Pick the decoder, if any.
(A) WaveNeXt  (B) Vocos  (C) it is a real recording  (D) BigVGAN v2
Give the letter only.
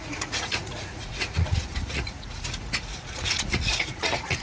B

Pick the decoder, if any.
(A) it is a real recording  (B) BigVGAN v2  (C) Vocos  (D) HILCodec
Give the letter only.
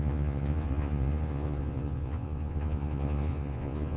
C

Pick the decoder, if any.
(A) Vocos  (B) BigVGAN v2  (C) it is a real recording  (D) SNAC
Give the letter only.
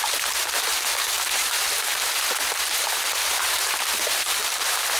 B